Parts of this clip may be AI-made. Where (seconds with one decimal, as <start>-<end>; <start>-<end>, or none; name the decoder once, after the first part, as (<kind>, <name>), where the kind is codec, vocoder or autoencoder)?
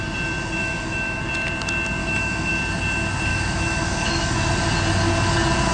0.6-1.2 (autoencoder, DAC-VAE); 2.0-2.5; 3.3-4.5